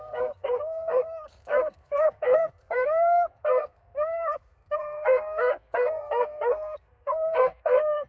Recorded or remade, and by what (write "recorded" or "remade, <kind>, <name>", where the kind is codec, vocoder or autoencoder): remade, codec, SNAC